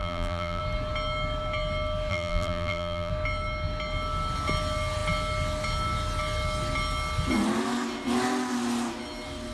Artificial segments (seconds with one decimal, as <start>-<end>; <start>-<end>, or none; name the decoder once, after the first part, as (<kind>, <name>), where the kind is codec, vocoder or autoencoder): 0.0-0.6 (vocoder, BigVGAN v2); 2.1-3.1